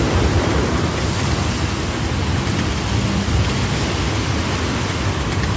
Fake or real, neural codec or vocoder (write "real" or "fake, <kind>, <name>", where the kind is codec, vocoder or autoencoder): real